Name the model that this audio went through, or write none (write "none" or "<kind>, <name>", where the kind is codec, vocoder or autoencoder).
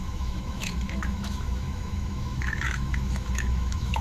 autoencoder, DAC-VAE